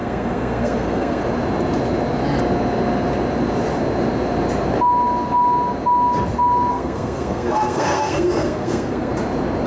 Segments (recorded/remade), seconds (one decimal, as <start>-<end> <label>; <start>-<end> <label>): 0.0-1.2 remade; 1.2-6.7 recorded; 6.7-9.1 remade; 9.1-9.7 recorded